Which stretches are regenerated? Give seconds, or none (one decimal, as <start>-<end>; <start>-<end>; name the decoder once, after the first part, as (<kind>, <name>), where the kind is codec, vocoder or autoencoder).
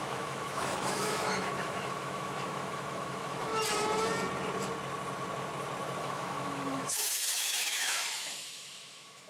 0.0-3.5 (autoencoder, DAC-VAE); 6.0-9.3